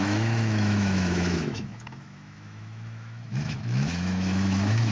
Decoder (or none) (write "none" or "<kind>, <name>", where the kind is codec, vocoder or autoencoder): autoencoder, DAC-VAE